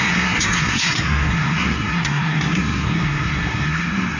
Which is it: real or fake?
fake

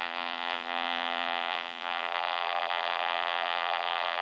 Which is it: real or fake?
fake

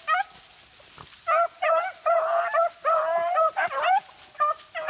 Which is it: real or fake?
real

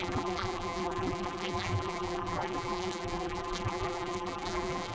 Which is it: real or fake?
fake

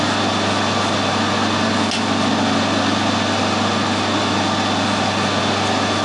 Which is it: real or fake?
real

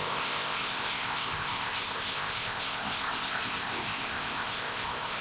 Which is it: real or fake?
fake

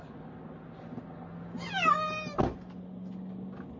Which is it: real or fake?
real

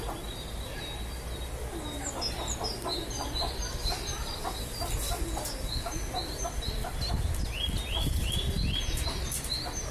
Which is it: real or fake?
real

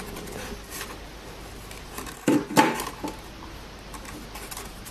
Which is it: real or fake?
real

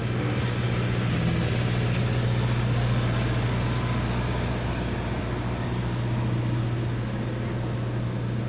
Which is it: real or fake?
real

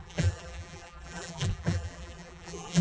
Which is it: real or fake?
fake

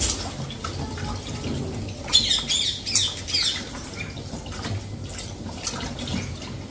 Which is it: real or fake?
real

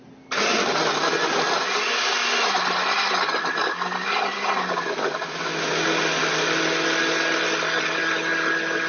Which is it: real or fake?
real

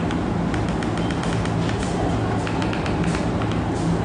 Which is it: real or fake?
real